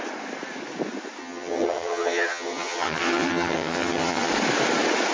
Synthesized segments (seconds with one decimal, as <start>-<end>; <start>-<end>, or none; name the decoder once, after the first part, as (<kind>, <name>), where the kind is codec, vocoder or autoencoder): 1.2-4.3 (vocoder, HiFi-GAN)